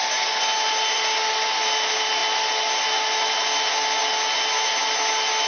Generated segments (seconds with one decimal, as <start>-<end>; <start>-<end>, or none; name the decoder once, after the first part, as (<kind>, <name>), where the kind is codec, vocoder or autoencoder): none